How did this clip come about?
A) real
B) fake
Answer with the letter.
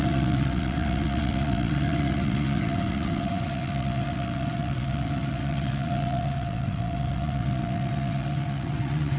B